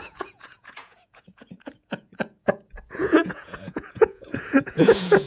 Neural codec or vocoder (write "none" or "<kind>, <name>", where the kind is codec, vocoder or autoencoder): vocoder, Vocos